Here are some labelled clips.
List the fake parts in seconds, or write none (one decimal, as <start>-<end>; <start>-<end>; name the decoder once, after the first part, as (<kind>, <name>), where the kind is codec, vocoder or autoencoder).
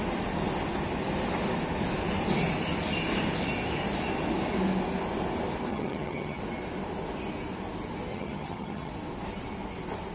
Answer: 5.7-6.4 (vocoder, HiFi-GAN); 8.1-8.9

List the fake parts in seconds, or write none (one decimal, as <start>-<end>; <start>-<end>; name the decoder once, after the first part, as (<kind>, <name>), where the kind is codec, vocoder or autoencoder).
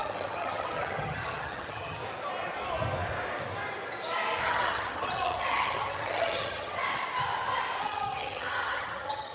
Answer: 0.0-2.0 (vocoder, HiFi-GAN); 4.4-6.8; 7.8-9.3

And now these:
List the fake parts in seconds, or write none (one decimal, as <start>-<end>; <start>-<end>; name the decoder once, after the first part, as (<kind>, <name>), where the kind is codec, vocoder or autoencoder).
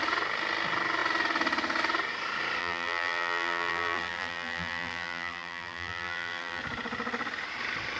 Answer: 2.6-6.6 (vocoder, BigVGAN v2)